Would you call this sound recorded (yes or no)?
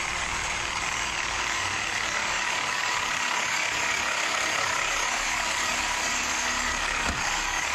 no